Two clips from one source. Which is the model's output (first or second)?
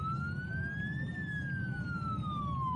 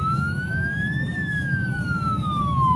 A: second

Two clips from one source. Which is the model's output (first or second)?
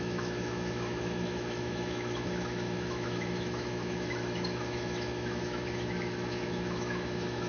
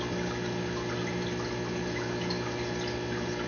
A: first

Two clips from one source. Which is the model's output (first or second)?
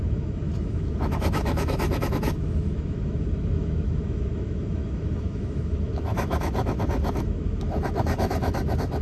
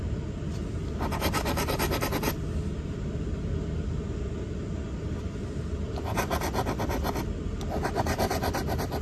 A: first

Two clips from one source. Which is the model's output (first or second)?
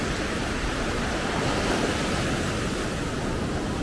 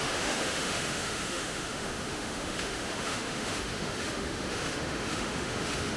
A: second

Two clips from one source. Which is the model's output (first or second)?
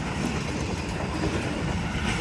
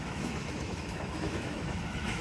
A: second